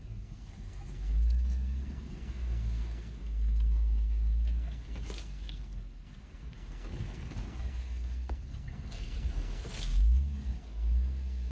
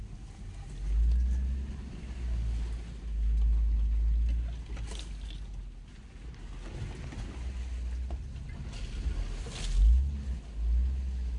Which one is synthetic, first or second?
first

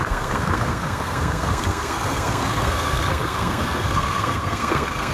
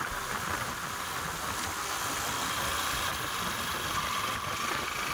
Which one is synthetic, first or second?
first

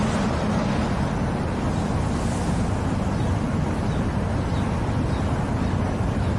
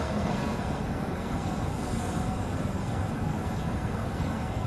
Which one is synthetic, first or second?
second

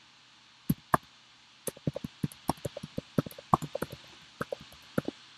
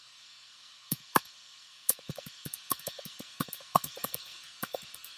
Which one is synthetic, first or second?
second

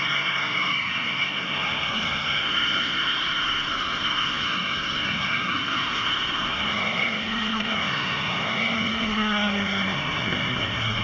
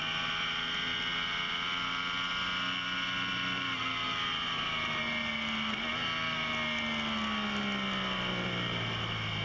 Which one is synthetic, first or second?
first